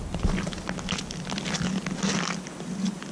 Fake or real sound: real